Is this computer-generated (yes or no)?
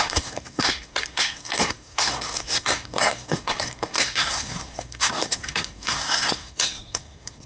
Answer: yes